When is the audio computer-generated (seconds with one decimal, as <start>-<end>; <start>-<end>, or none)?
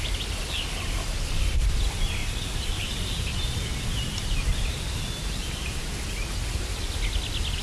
2.2-6.8